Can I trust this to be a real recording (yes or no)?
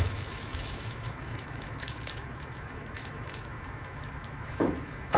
no